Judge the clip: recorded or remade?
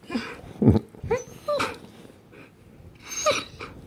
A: recorded